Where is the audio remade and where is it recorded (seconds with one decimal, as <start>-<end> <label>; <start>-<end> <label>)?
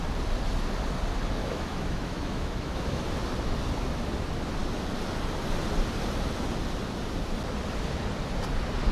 0.0-1.4 recorded; 1.4-3.0 remade; 3.0-8.9 recorded